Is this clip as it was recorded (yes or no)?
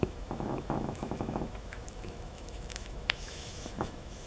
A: no